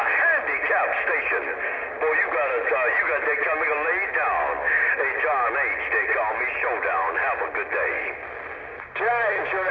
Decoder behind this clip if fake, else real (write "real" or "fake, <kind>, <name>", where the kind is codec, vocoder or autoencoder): real